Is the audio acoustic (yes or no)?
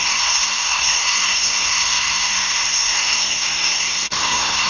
no